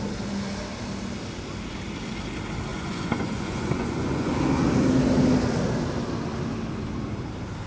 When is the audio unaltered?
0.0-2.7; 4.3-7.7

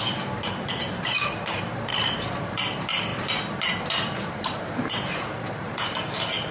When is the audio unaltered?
1.9-2.5

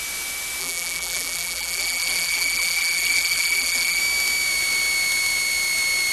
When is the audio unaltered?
0.0-0.6; 4.0-6.1